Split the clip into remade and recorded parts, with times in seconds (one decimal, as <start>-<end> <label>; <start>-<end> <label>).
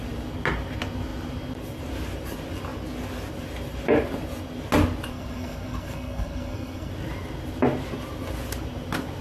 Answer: 0.0-5.1 recorded; 5.1-6.9 remade; 6.9-9.2 recorded